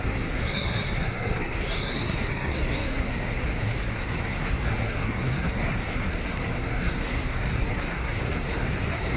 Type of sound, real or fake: fake